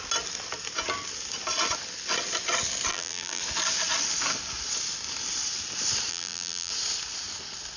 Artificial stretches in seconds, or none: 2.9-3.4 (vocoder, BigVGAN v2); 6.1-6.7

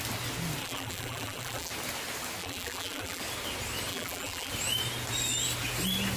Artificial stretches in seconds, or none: 0.6-1.7 (vocoder, BigVGAN v2); 2.4-3.2; 3.9-4.5

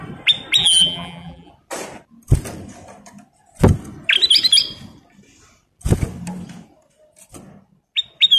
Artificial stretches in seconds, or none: 0.6-1.5 (vocoder, BigVGAN v2)

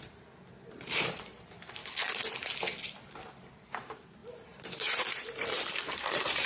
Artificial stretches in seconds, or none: 0.0-1.8 (vocoder, BigVGAN v2); 3.2-6.5

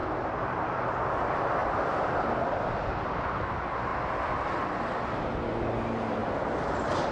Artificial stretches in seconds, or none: 1.6-2.1 (vocoder, BigVGAN v2); 6.2-7.1

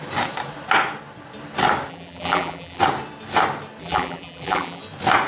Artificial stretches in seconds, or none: 1.9-2.8 (vocoder, BigVGAN v2); 3.8-4.8

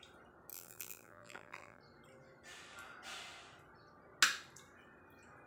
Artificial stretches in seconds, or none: 0.5-1.8 (vocoder, BigVGAN v2)